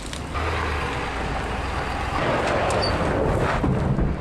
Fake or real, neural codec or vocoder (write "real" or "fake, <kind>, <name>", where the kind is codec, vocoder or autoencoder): real